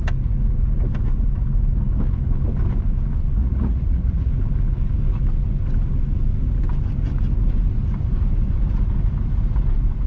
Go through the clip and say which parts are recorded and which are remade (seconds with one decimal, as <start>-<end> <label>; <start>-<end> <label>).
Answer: 0.0-3.4 recorded; 3.4-4.3 remade; 4.3-10.1 recorded

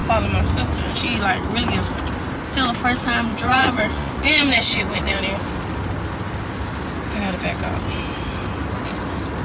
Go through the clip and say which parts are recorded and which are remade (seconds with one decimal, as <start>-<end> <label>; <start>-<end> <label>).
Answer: 0.0-3.3 recorded; 3.3-5.2 remade; 5.2-9.4 recorded

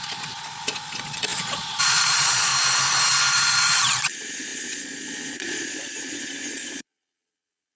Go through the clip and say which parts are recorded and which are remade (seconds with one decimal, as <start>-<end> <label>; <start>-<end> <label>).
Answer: 0.0-2.5 remade; 2.5-3.3 recorded; 3.3-7.8 remade

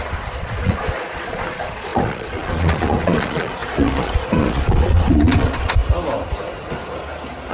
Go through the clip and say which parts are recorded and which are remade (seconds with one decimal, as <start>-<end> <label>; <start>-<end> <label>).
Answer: 0.0-5.8 remade; 5.8-7.5 recorded

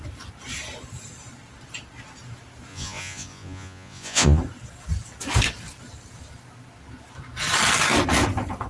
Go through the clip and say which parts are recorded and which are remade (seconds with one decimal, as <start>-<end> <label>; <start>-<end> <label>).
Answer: 0.0-2.7 recorded; 2.7-4.4 remade; 4.4-8.7 recorded

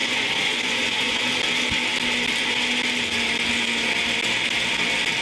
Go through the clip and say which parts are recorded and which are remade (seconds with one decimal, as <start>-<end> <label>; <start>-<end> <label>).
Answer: 0.0-1.2 remade; 1.2-5.2 recorded

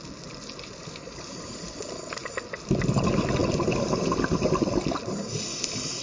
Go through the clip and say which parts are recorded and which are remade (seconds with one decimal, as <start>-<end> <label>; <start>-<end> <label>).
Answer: 0.0-6.0 recorded